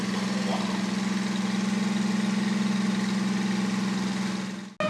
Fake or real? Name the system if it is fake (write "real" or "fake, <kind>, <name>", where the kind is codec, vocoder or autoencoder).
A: real